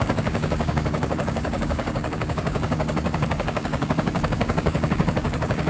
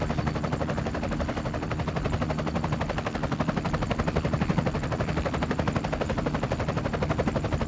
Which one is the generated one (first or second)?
first